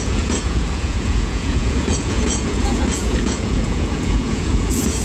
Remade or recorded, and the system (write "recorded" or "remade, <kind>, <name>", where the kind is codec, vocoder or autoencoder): remade, vocoder, Vocos